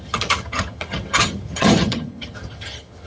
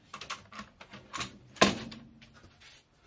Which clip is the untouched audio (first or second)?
second